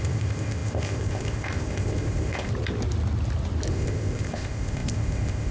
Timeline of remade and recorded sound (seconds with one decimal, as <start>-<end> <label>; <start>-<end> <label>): 0.0-2.5 remade; 2.5-3.7 recorded; 3.7-5.5 remade